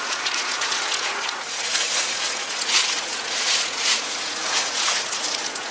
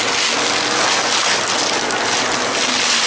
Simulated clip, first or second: first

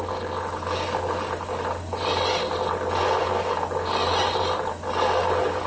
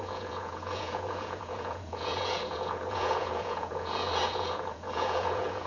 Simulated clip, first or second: second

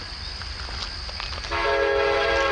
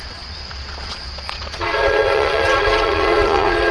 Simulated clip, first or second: second